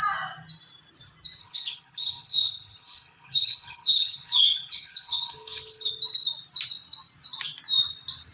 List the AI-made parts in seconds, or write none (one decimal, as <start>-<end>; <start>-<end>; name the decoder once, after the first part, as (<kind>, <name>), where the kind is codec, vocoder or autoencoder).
1.4-5.9 (codec, HILCodec)